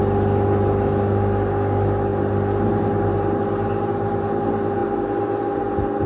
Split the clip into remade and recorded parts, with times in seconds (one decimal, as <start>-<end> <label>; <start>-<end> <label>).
0.0-6.1 recorded